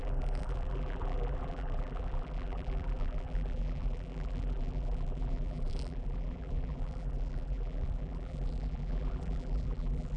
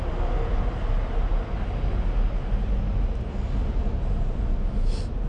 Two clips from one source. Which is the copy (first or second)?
first